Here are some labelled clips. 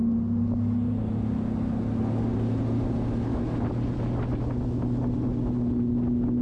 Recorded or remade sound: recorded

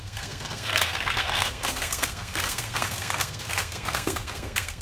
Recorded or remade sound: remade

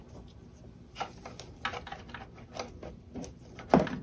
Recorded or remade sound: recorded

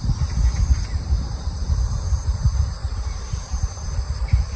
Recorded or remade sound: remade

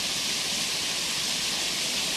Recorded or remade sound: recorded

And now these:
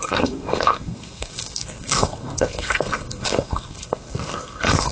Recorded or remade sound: remade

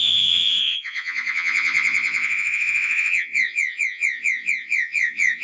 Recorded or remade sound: remade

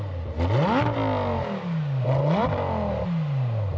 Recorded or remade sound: recorded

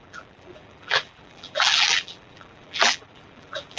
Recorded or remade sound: remade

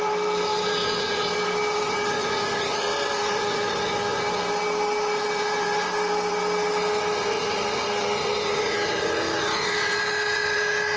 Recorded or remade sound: recorded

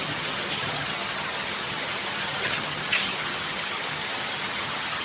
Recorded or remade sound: remade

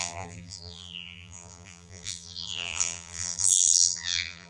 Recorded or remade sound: remade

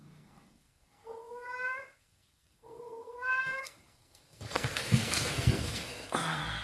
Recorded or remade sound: remade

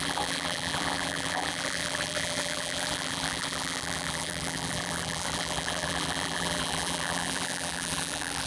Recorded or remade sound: remade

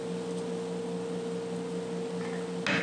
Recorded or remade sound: recorded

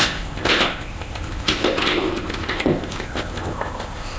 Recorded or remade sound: remade